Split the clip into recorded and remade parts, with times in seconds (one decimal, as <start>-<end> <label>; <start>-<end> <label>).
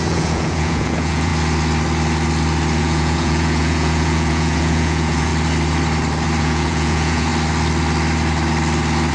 0.0-1.3 remade; 1.3-2.8 recorded; 2.8-5.3 remade; 5.3-6.4 recorded; 6.4-7.3 remade; 7.3-9.1 recorded